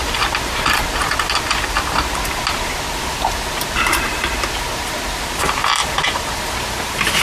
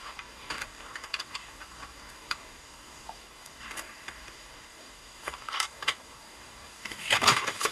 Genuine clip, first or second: first